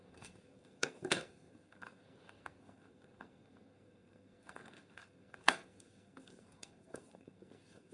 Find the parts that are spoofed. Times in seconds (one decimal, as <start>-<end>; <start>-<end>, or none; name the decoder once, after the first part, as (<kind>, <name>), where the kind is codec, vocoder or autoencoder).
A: 0.0-7.9 (codec, SNAC)